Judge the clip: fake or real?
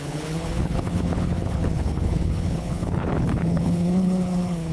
fake